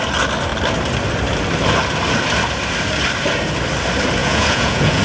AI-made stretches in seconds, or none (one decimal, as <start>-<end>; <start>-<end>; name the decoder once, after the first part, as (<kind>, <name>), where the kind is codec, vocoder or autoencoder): 4.2-5.0 (vocoder, Vocos)